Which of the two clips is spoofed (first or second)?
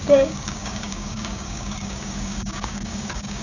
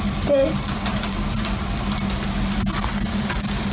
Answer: first